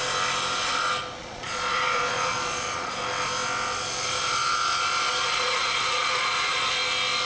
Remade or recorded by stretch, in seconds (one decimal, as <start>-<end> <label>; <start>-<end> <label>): 0.0-1.2 recorded; 1.2-3.0 remade; 3.0-4.4 recorded; 4.4-6.7 remade; 6.7-7.2 recorded

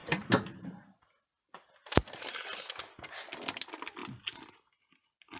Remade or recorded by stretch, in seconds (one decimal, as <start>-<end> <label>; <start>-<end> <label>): 0.0-5.4 recorded

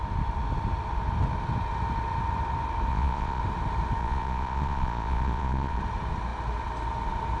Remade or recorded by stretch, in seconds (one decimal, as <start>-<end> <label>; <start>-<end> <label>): 0.0-2.9 recorded; 2.9-3.4 remade; 3.4-4.0 recorded; 4.0-5.8 remade; 5.8-7.4 recorded

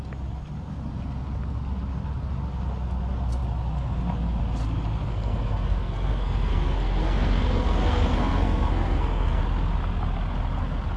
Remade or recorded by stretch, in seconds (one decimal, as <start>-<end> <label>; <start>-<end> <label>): 0.0-5.1 recorded; 5.1-9.4 remade; 9.4-11.0 recorded

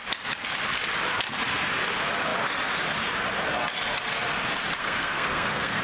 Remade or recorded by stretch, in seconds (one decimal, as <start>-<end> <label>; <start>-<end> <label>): 0.0-4.8 recorded; 4.8-5.8 remade

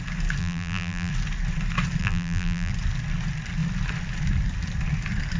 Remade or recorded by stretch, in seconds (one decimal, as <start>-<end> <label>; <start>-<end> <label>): 0.0-0.4 recorded; 0.4-1.1 remade; 1.1-2.0 recorded; 2.0-2.7 remade; 2.7-5.4 recorded